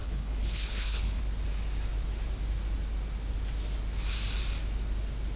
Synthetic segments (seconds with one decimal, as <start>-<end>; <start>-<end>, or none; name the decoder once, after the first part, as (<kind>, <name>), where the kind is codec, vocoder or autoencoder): 0.0-1.2 (codec, HILCodec)